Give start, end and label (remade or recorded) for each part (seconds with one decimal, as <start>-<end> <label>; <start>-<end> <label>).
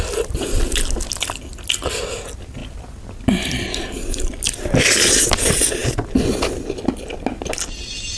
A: 0.0-8.2 recorded